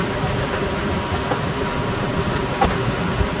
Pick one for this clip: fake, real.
real